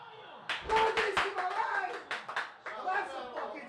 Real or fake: real